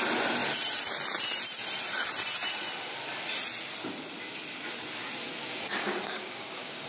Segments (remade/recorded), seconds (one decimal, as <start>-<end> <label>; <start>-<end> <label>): 0.0-5.4 recorded; 5.4-6.9 remade